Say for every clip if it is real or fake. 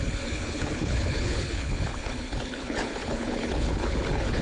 fake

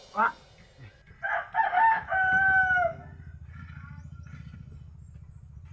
real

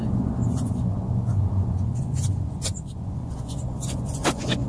fake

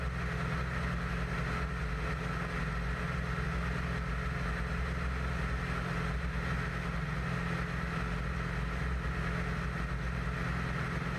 real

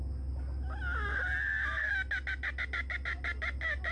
real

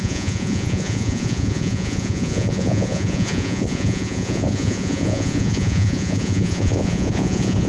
fake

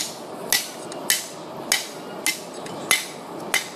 real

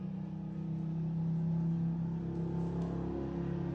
real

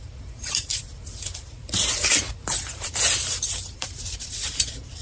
fake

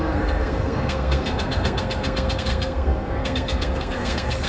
fake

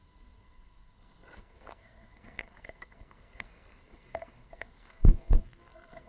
fake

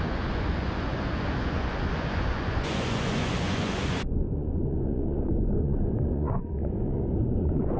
fake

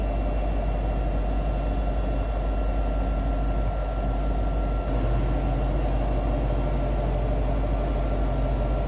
real